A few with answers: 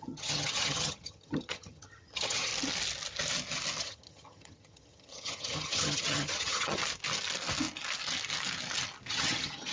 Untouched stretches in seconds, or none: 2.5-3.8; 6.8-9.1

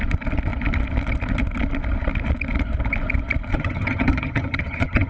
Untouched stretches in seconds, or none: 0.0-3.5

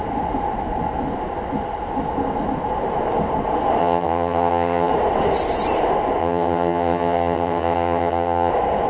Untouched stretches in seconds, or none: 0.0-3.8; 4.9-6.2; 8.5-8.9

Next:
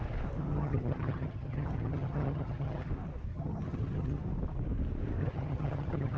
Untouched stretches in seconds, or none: 0.0-0.5; 2.9-3.3; 4.2-5.2

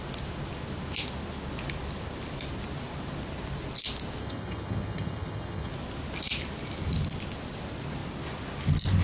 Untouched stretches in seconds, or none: 0.0-4.2; 5.7-9.0